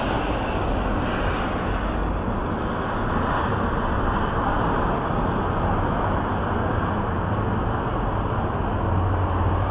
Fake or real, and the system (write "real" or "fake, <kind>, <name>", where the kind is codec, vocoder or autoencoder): real